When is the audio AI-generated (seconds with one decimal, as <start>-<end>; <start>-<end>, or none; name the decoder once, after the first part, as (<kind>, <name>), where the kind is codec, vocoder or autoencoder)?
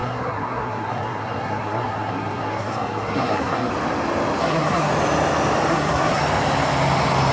0.0-3.7 (codec, SNAC); 4.4-4.9; 5.7-6.2